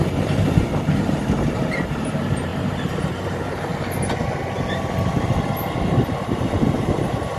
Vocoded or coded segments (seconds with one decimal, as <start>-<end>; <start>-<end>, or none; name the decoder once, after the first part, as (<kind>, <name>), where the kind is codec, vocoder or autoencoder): 0.0-3.7 (vocoder, BigVGAN v2); 6.2-7.4